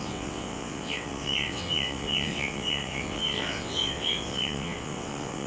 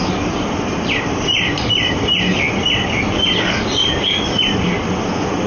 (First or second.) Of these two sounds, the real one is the second